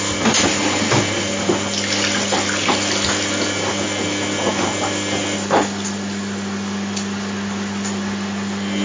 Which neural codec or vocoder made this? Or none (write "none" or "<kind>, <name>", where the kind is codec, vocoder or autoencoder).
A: none